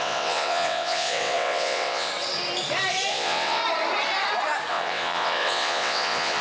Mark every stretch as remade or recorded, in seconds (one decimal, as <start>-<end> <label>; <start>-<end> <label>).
0.0-2.1 remade; 2.1-3.1 recorded; 3.1-3.6 remade; 3.6-4.7 recorded; 4.7-6.4 remade